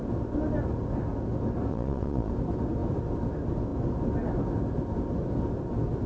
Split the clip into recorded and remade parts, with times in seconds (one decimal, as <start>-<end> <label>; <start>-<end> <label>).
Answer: 0.0-1.7 recorded; 1.7-2.3 remade; 2.3-6.1 recorded